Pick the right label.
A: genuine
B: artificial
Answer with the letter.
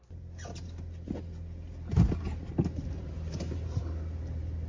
A